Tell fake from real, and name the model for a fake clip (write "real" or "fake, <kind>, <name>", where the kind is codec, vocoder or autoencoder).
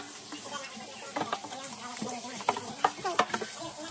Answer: real